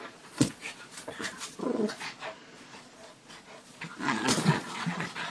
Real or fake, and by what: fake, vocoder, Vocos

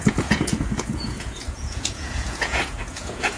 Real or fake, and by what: fake, vocoder, Vocos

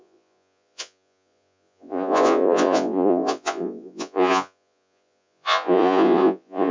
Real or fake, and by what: fake, vocoder, Vocos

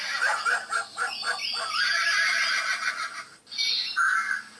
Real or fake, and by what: real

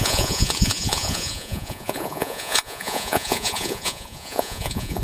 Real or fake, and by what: fake, vocoder, Vocos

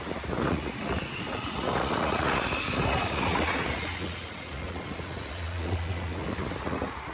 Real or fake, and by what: fake, vocoder, Vocos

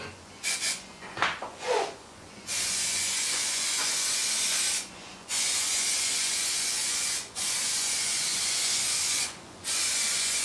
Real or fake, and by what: fake, vocoder, Vocos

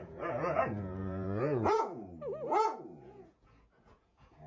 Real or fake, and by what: fake, vocoder, Vocos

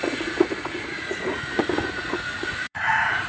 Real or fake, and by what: fake, vocoder, Vocos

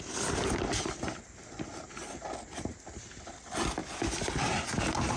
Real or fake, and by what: real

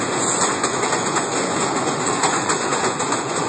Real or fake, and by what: fake, vocoder, Vocos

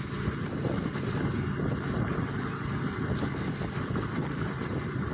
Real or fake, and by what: real